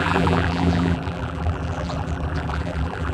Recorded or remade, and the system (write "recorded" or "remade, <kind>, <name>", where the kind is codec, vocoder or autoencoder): remade, vocoder, BigVGAN v2